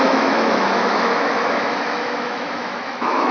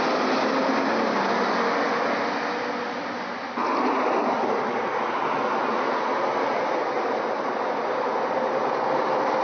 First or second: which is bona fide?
second